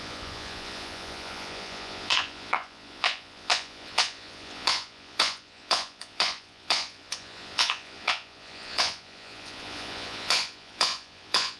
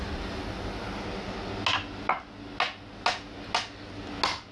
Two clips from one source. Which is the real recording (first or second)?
second